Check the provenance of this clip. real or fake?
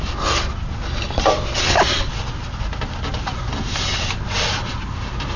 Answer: real